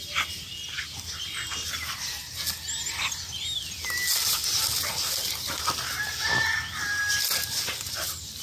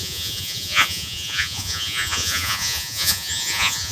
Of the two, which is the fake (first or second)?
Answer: second